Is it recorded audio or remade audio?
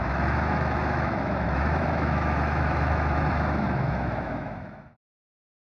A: remade